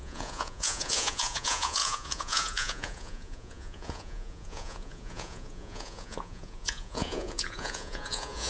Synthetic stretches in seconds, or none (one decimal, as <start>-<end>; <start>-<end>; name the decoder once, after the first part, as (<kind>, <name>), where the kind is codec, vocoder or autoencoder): 0.0-8.5 (vocoder, Vocos)